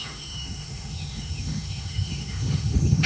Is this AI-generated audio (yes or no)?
yes